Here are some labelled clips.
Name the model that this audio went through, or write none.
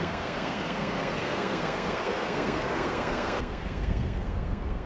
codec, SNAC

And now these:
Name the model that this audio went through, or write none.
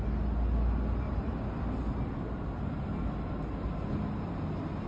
none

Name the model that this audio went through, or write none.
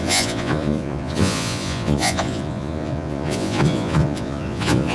vocoder, Vocos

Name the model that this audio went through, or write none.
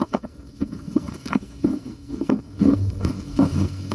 codec, SNAC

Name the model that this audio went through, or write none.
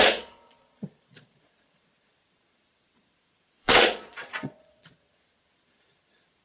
vocoder, Vocos